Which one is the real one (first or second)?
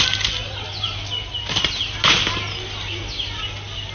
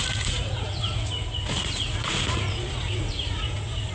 first